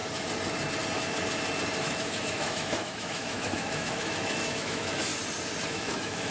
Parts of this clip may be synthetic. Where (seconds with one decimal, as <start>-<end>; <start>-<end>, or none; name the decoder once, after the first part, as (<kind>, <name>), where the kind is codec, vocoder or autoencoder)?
1.8-5.1 (autoencoder, DAC-VAE); 5.7-6.3